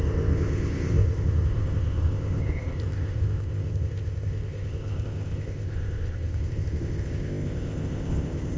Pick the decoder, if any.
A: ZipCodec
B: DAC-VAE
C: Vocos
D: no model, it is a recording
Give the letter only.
A